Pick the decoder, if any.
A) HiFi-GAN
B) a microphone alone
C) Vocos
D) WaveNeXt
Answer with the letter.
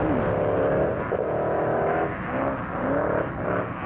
B